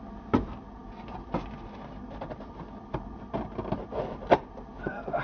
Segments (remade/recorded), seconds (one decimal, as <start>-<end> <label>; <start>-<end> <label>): 0.0-5.2 recorded